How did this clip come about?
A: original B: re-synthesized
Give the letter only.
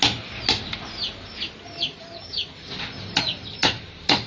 A